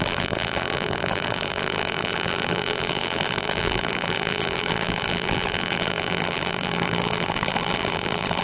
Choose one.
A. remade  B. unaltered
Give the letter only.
A